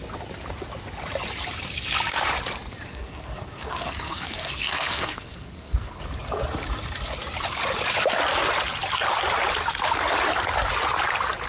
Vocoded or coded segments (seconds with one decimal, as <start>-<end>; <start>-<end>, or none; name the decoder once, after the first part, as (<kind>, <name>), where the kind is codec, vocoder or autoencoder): 2.9-6.0 (codec, SNAC)